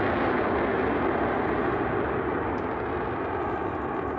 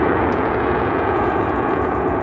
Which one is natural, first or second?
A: first